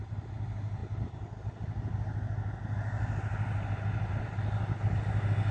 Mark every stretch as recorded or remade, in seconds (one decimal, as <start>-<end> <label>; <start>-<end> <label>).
0.0-5.5 recorded